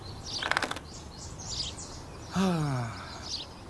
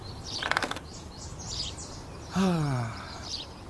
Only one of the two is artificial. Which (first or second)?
second